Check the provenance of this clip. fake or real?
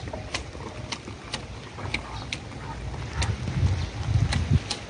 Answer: real